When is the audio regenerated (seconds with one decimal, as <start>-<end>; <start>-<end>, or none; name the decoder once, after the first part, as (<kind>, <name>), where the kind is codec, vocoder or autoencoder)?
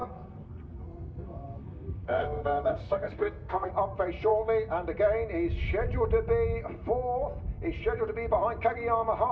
0.0-3.7 (codec, SNAC)